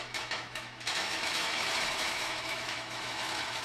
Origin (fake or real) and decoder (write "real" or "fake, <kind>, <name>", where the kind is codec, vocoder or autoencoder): fake, autoencoder, DAC-VAE